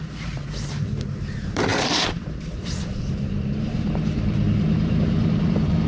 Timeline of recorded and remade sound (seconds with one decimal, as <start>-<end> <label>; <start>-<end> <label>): 0.0-5.9 remade